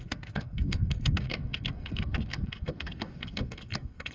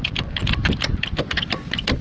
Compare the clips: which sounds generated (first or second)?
first